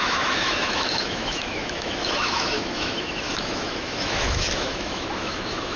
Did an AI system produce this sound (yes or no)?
yes